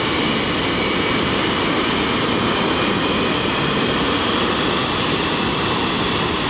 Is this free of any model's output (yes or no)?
yes